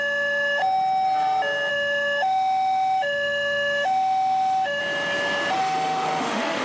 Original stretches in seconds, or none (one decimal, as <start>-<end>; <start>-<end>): 0.6-1.7; 4.8-5.6